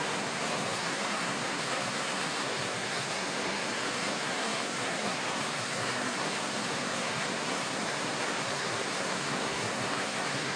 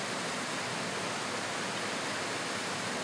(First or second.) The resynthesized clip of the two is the first